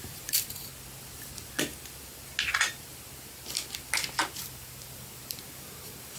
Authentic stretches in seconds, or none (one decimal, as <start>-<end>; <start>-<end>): 0.7-4.4